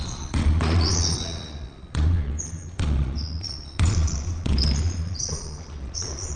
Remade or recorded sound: remade